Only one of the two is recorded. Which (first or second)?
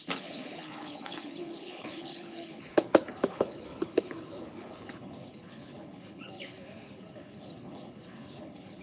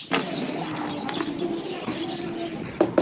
second